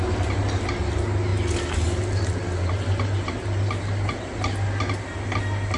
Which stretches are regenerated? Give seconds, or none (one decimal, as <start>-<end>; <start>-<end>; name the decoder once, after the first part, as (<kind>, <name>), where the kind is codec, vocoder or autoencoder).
none

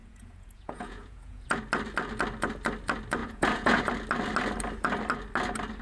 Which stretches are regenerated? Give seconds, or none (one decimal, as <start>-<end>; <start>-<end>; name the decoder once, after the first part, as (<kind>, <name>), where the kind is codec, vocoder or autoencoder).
0.0-1.6 (vocoder, Vocos); 3.2-3.8

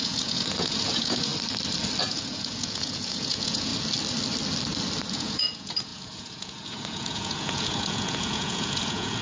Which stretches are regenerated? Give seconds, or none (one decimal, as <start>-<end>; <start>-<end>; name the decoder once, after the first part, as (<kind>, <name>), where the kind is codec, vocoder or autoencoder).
0.0-1.3 (vocoder, Vocos); 2.0-3.7; 5.1-9.2

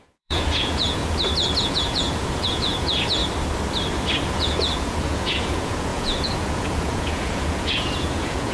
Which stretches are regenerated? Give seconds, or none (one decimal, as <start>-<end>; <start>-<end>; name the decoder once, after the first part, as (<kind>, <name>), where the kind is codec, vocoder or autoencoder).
0.0-1.0 (vocoder, Vocos); 1.6-3.2; 4.3-8.5

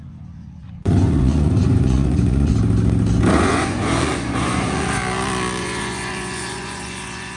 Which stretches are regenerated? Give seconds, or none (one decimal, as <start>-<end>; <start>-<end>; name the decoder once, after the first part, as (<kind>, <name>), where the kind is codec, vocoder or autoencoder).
0.0-2.5 (vocoder, Vocos); 3.3-5.0; 5.6-7.4

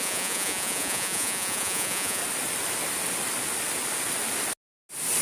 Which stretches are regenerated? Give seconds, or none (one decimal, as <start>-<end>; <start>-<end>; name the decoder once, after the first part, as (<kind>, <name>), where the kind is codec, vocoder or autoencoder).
0.0-2.2 (vocoder, Vocos)

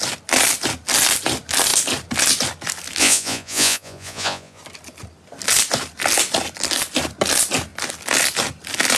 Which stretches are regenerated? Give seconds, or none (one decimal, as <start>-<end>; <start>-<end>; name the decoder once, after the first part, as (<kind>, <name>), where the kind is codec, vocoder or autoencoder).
3.0-4.6 (vocoder, Vocos)